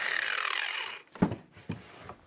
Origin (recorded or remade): recorded